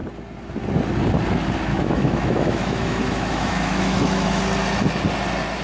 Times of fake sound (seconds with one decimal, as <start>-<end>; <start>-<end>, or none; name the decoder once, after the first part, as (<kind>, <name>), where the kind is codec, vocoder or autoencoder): 1.7-4.4 (autoencoder, DAC-VAE)